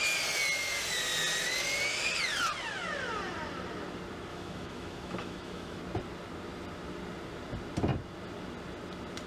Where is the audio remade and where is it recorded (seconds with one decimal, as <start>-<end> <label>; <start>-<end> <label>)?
0.0-4.3 recorded; 4.3-5.8 remade; 5.8-9.3 recorded